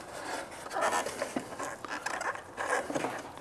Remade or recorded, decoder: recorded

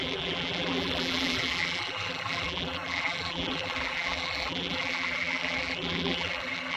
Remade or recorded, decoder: remade, vocoder, BigVGAN v2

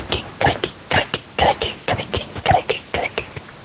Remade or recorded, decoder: recorded